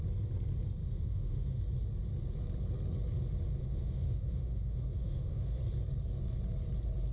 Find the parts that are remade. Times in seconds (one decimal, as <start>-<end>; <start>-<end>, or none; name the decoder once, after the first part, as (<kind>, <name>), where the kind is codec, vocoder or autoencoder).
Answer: 0.8-1.6 (autoencoder, DAC-VAE); 3.6-5.6